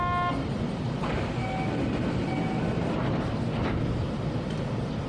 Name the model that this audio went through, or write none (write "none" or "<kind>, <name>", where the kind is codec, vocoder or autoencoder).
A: none